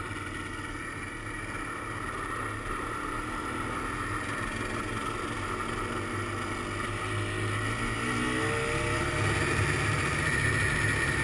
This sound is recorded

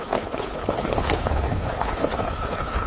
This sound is remade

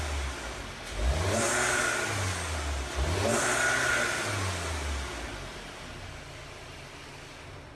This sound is recorded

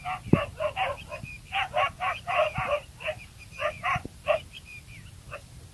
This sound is recorded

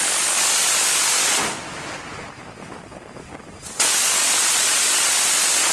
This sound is recorded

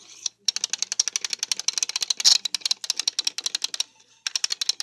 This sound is recorded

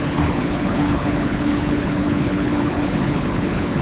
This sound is remade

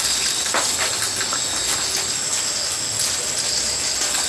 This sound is recorded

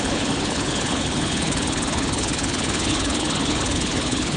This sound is remade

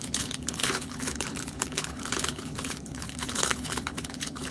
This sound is remade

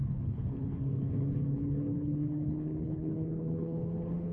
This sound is remade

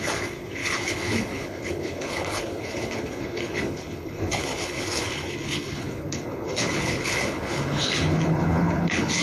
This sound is remade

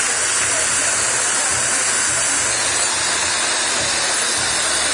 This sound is recorded